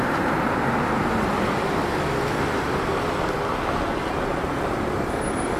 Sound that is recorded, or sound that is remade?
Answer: recorded